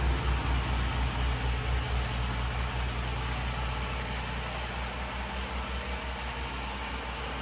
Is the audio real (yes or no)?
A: yes